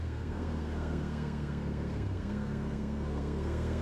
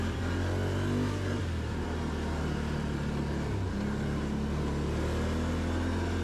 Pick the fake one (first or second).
first